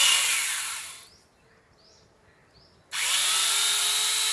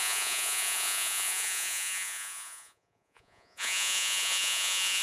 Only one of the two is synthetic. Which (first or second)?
second